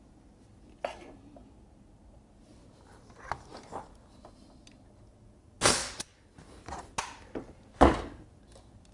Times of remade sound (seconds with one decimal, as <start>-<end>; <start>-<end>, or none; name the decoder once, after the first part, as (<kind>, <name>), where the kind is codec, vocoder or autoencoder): 5.8-6.8 (vocoder, BigVGAN v2)